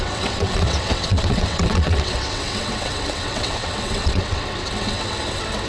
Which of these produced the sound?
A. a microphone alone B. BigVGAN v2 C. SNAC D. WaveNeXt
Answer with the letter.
D